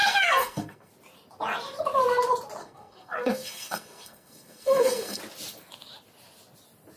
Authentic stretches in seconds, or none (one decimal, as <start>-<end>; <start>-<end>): 0.9-2.6; 5.2-7.0